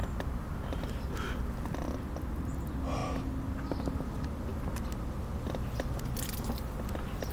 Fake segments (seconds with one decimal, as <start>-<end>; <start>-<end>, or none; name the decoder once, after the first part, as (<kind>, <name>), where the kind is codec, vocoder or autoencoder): 0.0-1.5 (vocoder, BigVGAN v2)